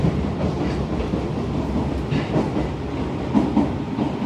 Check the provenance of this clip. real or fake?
real